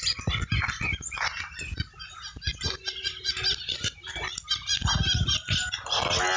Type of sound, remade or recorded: recorded